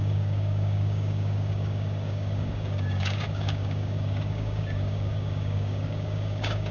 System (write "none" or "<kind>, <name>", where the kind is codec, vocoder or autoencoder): codec, DAC